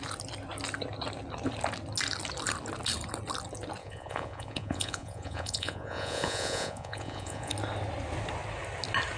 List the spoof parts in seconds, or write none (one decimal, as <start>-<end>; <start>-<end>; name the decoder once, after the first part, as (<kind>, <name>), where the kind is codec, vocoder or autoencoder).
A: 3.8-7.5 (vocoder, Vocos)